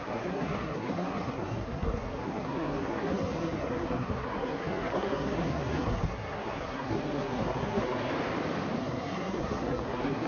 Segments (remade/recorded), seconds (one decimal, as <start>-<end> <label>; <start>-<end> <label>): 0.0-8.1 remade; 8.1-8.8 recorded; 8.8-10.3 remade